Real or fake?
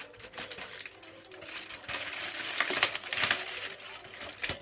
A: real